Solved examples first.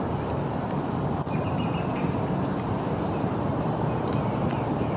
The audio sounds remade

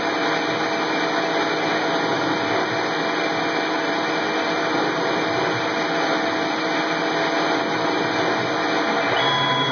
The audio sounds recorded